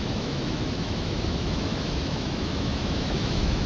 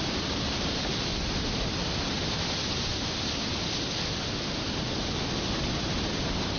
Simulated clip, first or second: first